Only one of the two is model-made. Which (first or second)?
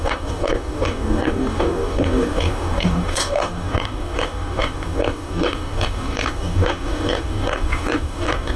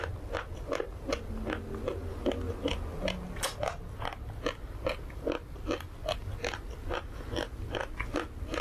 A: first